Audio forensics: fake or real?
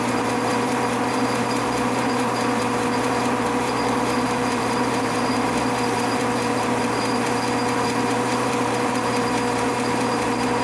fake